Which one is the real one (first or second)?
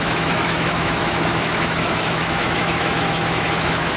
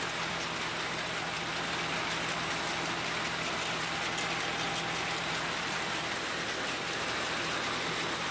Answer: second